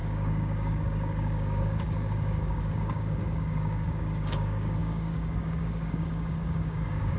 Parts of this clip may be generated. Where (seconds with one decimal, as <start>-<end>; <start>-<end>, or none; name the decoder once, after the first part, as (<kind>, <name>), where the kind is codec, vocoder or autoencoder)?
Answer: 0.0-7.2 (codec, DAC)